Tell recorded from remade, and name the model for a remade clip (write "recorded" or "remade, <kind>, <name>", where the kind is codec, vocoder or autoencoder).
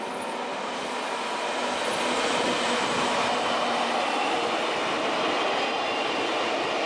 recorded